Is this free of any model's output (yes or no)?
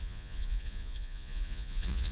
no